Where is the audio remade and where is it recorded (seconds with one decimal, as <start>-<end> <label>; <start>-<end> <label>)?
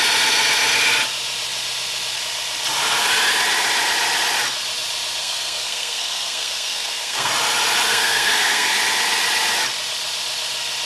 0.0-5.2 recorded; 5.2-7.3 remade; 7.3-7.9 recorded; 7.9-8.7 remade; 8.7-10.9 recorded